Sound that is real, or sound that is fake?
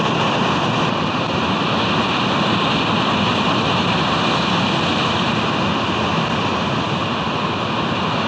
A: real